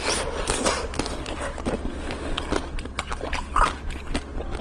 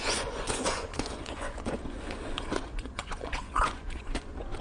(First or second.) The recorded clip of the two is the first